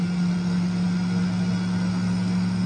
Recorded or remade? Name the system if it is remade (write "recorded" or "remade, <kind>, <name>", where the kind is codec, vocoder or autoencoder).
recorded